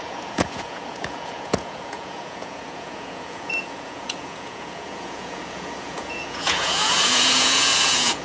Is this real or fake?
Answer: fake